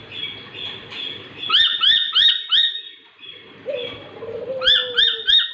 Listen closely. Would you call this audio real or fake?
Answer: real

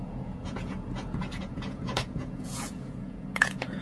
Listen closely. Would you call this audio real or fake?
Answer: fake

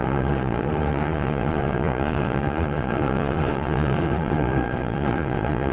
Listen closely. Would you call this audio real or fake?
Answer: fake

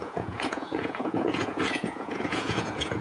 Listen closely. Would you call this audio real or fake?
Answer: fake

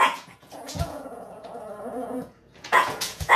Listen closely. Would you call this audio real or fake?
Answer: fake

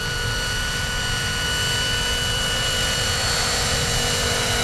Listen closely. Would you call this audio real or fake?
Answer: real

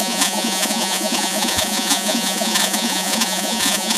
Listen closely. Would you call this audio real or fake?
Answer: fake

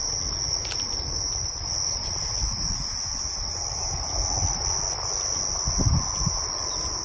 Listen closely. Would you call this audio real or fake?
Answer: real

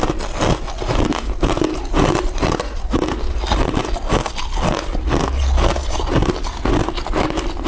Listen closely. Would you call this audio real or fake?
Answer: real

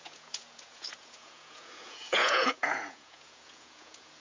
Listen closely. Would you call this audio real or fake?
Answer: fake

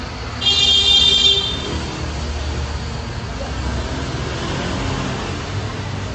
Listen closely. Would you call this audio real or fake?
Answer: real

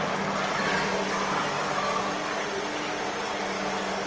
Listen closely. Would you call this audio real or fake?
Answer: real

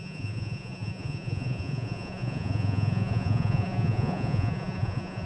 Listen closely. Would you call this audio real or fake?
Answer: fake